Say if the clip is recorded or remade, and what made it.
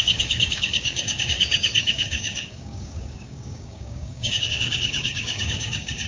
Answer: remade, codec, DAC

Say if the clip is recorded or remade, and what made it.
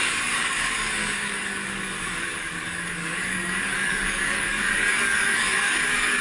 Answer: remade, codec, DAC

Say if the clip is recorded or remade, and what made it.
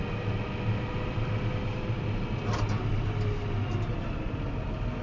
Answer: recorded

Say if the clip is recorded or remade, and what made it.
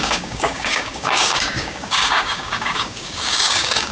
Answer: remade, codec, DAC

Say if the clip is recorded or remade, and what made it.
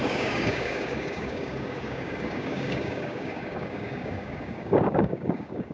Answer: remade, codec, DAC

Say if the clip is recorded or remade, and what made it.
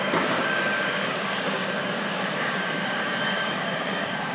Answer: remade, codec, DAC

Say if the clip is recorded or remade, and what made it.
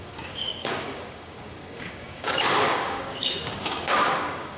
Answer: remade, codec, DAC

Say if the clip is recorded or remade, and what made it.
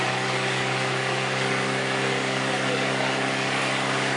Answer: remade, codec, DAC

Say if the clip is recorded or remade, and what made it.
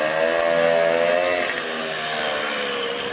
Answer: recorded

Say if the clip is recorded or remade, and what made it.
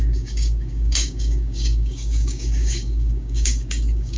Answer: remade, codec, DAC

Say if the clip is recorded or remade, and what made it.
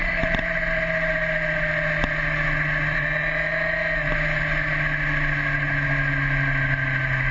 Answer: recorded